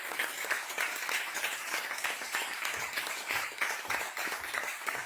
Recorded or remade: remade